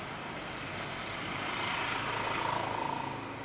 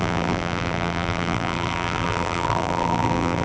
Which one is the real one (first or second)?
first